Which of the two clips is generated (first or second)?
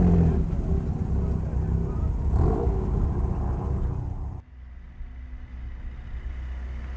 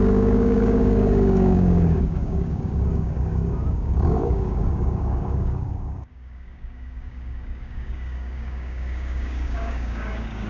second